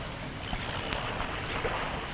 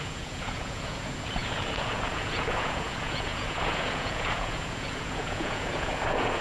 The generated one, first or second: second